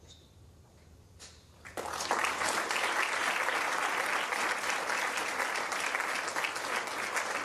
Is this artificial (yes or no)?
no